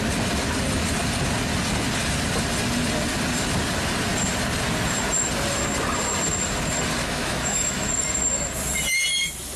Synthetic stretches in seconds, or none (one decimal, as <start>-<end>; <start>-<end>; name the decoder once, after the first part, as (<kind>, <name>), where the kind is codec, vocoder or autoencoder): 7.0-7.9 (autoencoder, DAC-VAE)